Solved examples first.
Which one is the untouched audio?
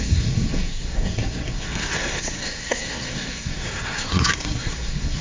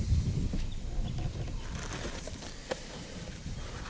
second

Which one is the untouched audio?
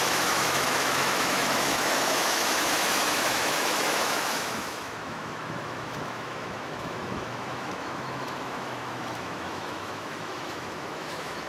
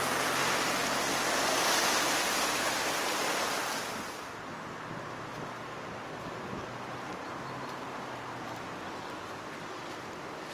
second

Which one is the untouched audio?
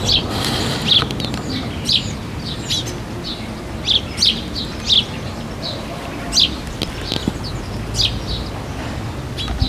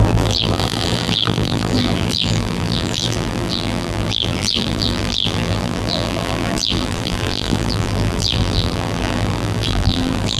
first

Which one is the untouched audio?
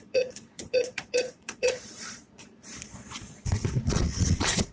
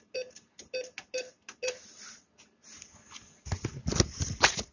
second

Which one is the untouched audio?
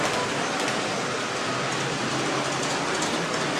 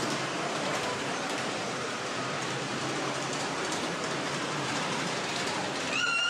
first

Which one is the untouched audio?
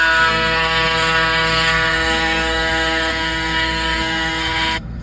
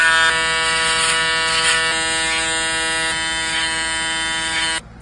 second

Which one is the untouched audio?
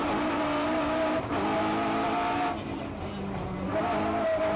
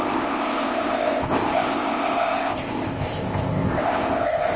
first